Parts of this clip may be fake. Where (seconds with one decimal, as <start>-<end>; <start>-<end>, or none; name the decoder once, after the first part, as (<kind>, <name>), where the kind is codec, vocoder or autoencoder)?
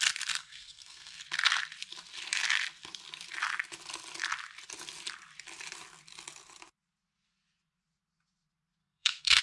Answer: 0.4-1.2 (codec, SNAC); 8.8-9.4